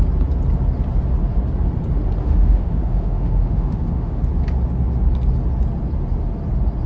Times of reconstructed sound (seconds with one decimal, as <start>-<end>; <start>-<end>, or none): 2.2-4.2